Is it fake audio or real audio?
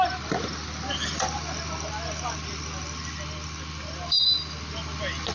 real